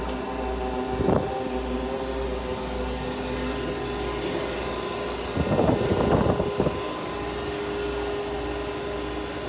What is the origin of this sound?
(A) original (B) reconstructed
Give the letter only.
A